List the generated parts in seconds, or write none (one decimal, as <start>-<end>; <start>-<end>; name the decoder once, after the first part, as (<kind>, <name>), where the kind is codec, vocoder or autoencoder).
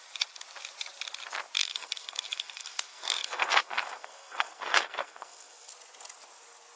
1.6-5.7 (codec, SNAC)